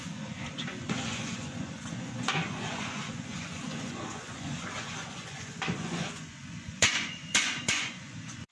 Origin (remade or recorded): remade